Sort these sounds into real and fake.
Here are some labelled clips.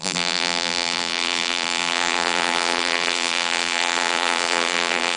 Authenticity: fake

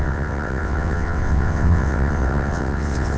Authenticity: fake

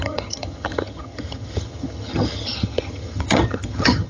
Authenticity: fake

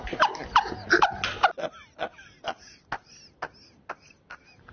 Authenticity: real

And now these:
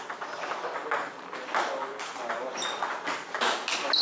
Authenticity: real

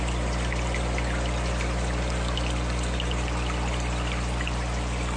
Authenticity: real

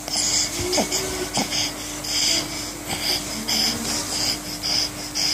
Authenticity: real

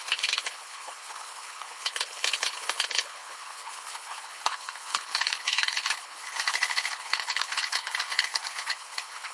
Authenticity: fake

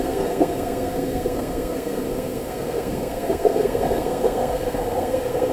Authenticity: fake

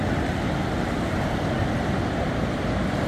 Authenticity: real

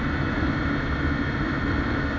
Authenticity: real